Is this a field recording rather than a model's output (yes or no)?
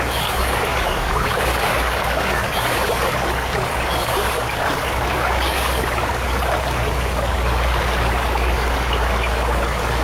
no